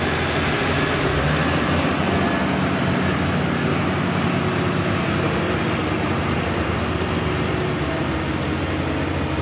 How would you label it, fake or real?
real